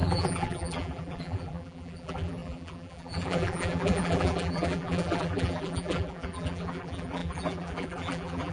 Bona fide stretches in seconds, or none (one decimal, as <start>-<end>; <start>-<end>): none